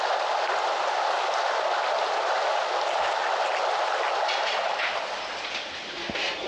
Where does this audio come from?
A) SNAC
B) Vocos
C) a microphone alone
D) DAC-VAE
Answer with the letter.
C